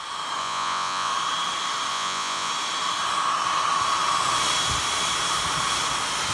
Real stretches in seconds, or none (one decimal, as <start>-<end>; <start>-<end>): 0.0-0.4; 1.1-1.9; 2.5-6.3